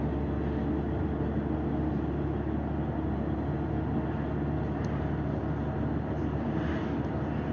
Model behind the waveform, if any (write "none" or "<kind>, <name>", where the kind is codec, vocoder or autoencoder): none